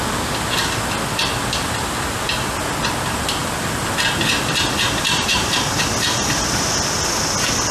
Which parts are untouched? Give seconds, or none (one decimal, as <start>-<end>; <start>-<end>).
0.0-5.3; 5.8-7.7